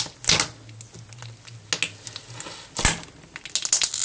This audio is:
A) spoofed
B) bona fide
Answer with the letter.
B